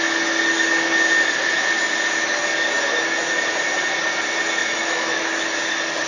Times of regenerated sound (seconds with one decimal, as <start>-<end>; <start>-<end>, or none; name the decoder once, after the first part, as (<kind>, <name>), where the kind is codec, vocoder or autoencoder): 4.6-5.2 (autoencoder, DAC-VAE)